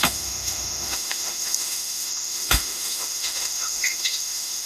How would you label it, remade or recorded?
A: remade